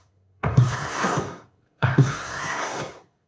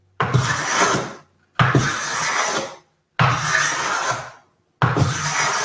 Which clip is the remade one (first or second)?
first